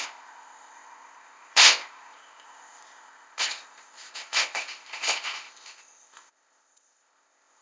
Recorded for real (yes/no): no